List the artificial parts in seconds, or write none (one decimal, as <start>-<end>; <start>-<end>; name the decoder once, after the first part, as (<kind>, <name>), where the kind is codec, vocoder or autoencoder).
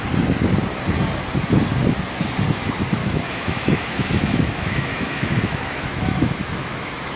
3.0-7.2 (autoencoder, DAC-VAE)